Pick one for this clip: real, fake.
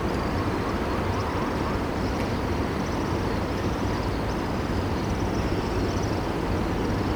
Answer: real